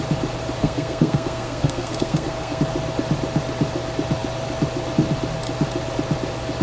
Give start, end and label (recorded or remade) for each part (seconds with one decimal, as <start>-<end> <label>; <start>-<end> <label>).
0.0-0.6 recorded; 0.6-2.6 remade; 2.6-6.6 recorded